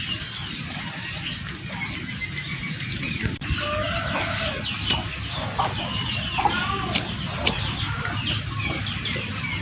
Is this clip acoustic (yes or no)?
yes